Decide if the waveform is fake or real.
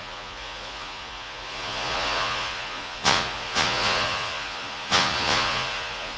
fake